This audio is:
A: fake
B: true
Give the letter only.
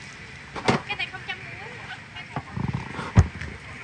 B